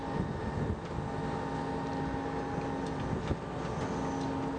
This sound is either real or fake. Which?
real